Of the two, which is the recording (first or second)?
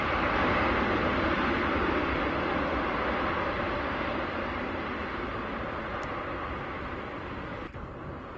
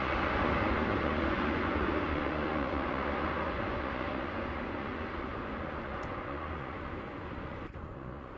first